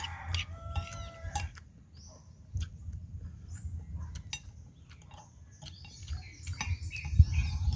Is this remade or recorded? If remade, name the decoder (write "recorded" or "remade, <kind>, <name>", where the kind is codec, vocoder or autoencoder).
recorded